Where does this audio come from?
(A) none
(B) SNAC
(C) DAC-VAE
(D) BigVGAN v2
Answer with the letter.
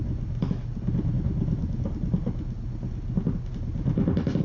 A